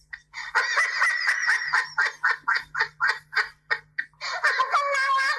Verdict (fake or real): real